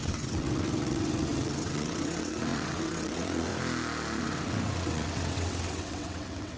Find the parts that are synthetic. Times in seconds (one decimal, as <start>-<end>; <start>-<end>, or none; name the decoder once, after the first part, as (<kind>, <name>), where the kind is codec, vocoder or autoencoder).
0.0-3.5 (vocoder, WaveNeXt); 4.2-6.6